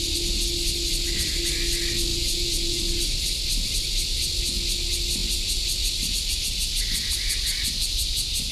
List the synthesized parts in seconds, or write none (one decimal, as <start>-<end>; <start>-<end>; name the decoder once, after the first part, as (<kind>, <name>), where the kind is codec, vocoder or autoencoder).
2.1-2.8 (vocoder, Vocos)